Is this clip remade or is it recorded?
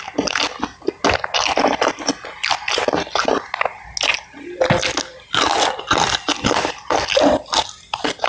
recorded